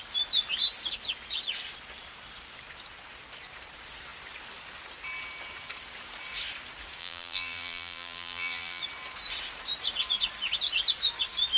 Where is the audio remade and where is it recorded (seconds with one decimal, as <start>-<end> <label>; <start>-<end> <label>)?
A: 0.0-7.0 recorded; 7.0-8.8 remade; 8.8-11.6 recorded